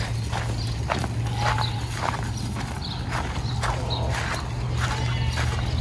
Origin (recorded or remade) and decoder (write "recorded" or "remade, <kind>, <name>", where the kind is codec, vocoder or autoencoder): recorded